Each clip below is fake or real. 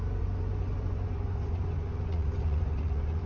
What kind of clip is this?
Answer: fake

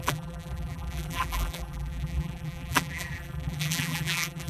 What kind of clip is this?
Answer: fake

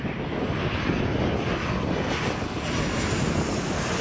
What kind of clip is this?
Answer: real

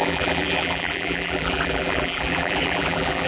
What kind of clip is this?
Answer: fake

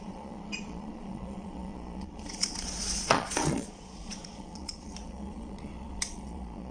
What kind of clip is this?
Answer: fake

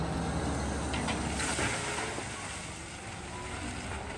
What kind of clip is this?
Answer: real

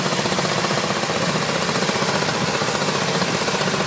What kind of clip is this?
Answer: real